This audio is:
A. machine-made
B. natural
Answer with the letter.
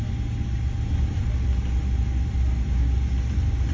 B